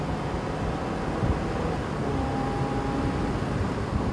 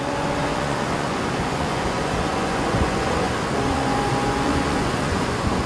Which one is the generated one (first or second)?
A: second